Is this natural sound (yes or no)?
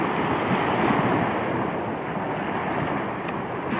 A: yes